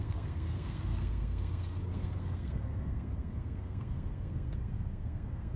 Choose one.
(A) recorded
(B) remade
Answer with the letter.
B